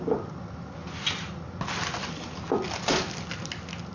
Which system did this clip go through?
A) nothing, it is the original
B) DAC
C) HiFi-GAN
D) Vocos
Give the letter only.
A